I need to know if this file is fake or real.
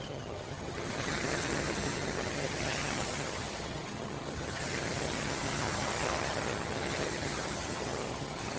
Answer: fake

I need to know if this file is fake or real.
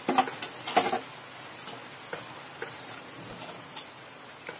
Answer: real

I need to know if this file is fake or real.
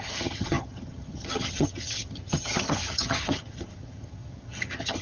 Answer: fake